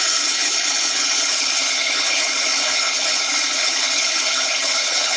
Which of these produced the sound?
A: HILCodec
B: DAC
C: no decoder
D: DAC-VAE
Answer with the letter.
A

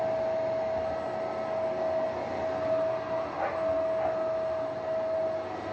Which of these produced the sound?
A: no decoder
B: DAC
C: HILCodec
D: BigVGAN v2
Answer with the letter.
A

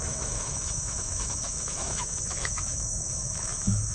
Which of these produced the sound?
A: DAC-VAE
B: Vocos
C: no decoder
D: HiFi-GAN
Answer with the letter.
A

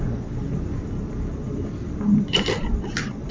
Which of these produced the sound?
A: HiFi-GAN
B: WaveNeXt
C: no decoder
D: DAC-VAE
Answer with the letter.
C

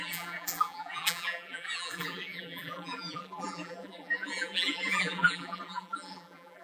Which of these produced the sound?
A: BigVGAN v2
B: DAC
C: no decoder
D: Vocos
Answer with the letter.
A